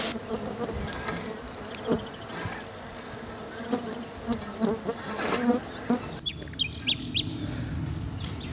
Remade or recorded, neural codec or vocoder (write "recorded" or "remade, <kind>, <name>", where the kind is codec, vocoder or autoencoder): recorded